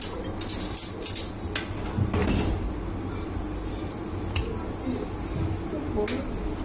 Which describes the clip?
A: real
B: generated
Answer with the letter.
A